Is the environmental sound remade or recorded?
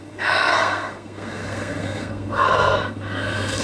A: remade